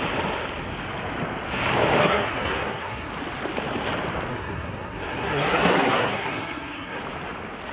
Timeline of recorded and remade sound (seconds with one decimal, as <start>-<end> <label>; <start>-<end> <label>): 0.0-2.0 recorded; 2.0-3.1 remade; 3.1-4.3 recorded; 4.3-7.0 remade; 7.0-7.7 recorded